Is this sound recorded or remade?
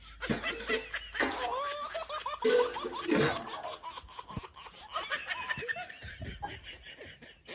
recorded